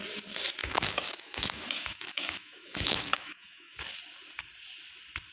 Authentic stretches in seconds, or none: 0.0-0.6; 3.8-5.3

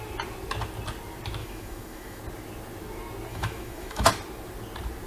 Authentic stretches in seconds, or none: 0.0-1.4; 2.2-3.3; 4.1-5.1

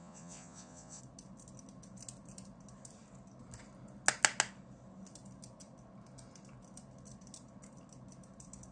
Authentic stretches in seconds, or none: 1.0-8.7

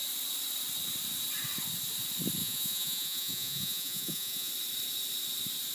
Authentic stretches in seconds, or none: 0.0-2.4; 4.5-5.7

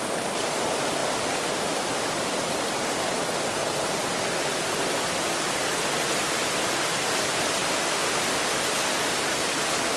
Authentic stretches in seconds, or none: 0.0-1.0; 1.5-3.6; 5.3-10.0

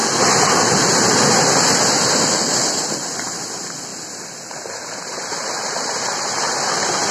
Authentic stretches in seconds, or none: 0.0-7.1